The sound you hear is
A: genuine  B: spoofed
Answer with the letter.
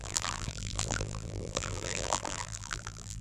B